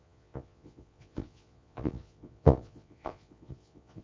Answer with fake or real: fake